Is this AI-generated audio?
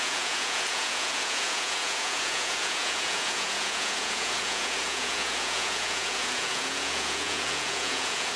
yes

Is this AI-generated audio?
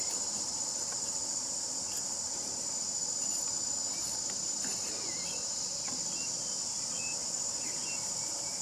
no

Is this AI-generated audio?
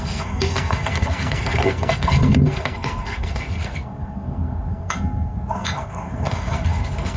yes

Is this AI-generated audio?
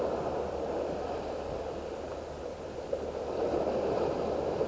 no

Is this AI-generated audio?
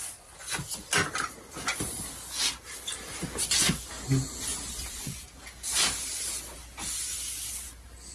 no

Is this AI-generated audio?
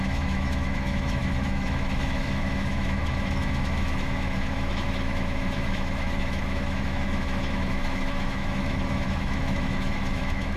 yes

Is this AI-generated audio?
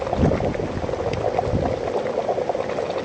no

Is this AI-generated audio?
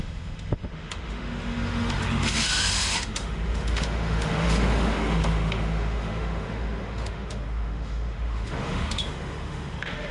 yes